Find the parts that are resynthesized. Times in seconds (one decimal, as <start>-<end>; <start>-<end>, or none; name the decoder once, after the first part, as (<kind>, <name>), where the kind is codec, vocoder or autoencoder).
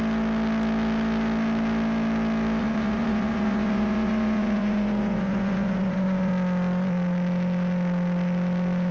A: 2.6-6.3 (vocoder, Vocos)